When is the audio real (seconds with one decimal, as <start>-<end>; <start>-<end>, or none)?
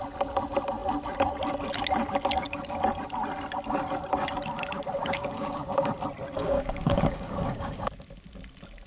0.0-5.0; 5.9-6.4; 7.9-8.9